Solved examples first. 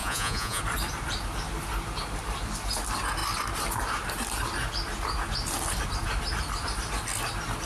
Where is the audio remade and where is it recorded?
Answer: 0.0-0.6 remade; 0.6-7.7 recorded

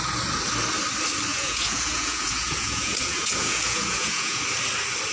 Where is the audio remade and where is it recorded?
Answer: 0.0-1.3 recorded; 1.3-4.4 remade; 4.4-5.1 recorded